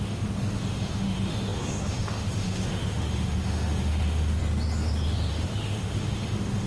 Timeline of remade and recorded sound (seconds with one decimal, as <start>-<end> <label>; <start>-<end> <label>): 0.0-4.4 remade; 4.4-5.3 recorded; 5.3-6.7 remade